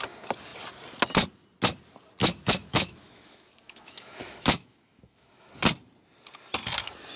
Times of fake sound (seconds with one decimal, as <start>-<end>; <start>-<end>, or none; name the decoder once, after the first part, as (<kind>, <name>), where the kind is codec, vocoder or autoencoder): 2.2-5.5 (autoencoder, DAC-VAE)